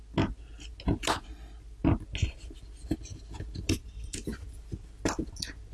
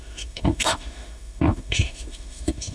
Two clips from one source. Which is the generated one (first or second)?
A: second